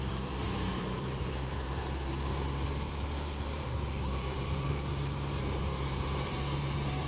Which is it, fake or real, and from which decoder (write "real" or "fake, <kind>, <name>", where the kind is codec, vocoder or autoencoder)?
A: fake, vocoder, BigVGAN v2